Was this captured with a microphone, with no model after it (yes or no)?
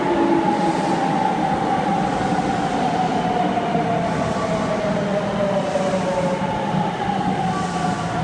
yes